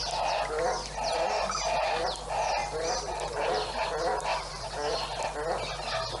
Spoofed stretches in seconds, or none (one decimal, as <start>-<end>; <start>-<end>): 2.6-3.5; 4.3-4.9